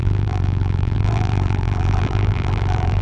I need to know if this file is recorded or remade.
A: remade